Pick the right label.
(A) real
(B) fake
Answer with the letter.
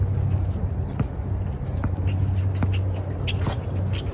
A